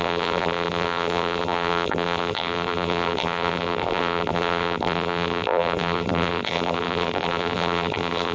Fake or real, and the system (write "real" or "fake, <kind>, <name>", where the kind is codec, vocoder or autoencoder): fake, vocoder, BigVGAN v2